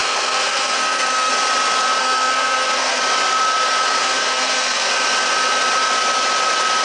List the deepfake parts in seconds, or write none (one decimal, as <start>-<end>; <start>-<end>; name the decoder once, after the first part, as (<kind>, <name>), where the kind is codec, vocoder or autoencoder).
0.0-1.3 (codec, SNAC); 2.0-3.0; 4.0-4.9